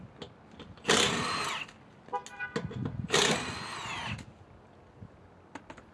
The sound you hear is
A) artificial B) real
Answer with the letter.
B